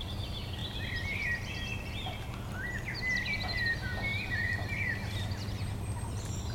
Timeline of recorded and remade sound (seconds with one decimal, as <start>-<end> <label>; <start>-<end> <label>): 0.0-6.5 recorded